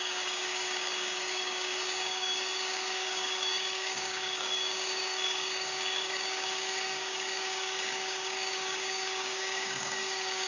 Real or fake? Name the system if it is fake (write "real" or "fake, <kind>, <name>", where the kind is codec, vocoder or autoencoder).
fake, codec, DAC